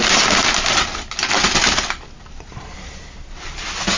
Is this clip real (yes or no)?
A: yes